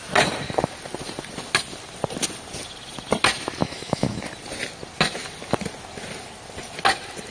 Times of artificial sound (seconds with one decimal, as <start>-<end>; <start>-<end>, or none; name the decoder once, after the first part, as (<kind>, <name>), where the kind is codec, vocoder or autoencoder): 3.6-4.2 (autoencoder, DAC-VAE)

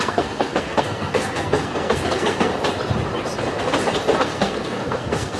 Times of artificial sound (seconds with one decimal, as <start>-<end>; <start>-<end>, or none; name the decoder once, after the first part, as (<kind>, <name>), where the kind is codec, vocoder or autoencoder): 0.0-2.5 (codec, SNAC); 4.2-5.4

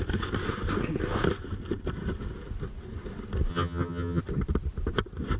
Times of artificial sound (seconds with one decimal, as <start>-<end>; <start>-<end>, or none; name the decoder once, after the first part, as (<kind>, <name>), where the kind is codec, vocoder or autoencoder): 3.5-4.2 (vocoder, HiFi-GAN)

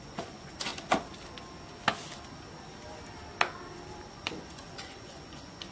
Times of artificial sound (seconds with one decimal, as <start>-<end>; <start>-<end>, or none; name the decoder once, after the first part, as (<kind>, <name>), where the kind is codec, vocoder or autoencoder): 0.0-0.7 (vocoder, Vocos); 4.1-5.7